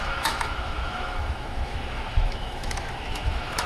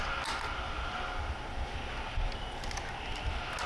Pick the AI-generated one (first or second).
first